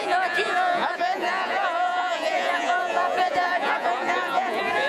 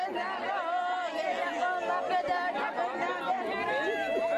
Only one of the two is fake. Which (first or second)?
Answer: first